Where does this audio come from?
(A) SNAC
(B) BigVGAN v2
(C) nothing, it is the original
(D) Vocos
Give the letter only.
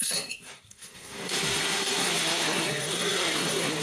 A